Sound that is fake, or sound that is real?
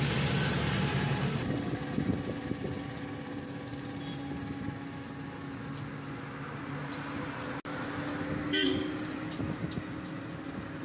real